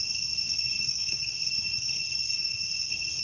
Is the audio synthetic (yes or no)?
yes